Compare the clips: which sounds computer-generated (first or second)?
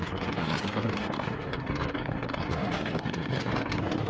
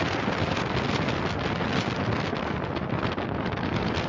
first